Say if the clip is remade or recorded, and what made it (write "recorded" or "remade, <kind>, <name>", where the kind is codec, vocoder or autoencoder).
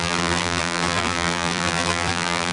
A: remade, vocoder, BigVGAN v2